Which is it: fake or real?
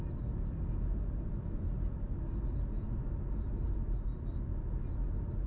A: real